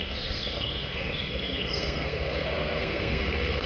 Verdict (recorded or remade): remade